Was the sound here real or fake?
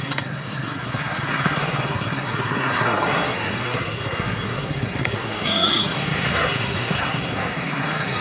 fake